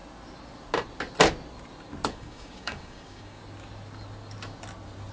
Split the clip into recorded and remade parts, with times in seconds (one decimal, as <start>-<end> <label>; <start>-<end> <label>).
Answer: 0.0-2.1 recorded; 2.1-3.4 remade; 3.4-5.1 recorded